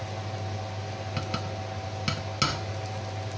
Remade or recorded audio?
recorded